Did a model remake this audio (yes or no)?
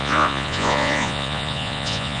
yes